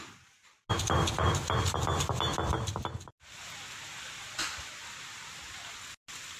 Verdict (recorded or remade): recorded